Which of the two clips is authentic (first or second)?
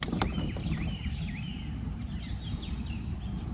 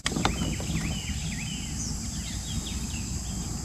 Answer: second